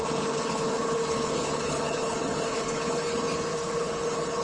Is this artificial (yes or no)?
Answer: yes